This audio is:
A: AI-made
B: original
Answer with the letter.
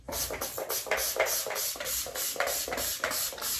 B